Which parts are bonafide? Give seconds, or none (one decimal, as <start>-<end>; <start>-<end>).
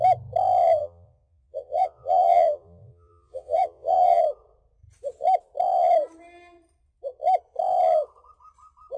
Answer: 0.0-0.8; 4.2-9.0